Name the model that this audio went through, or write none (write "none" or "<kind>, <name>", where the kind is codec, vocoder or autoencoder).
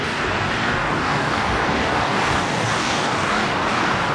codec, DAC